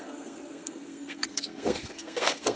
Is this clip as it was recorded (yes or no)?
no